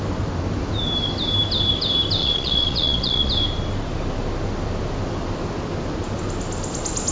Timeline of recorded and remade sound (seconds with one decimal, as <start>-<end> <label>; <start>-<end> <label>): 0.0-2.2 recorded; 2.2-3.3 remade; 3.3-7.1 recorded